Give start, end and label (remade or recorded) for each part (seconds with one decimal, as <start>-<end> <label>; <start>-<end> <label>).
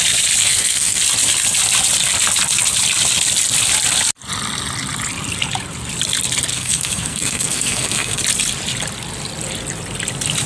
0.0-0.4 recorded; 0.4-1.0 remade; 1.0-6.5 recorded; 6.5-8.2 remade; 8.2-10.5 recorded